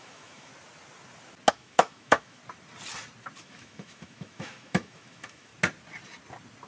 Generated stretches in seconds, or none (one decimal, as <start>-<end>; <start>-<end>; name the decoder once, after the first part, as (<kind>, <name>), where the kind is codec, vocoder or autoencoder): 0.0-0.5 (autoencoder, DAC-VAE); 1.5-2.4; 3.4-5.5